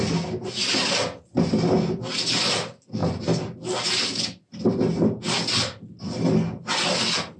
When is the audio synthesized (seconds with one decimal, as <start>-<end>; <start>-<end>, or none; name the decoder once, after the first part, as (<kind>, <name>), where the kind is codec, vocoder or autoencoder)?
none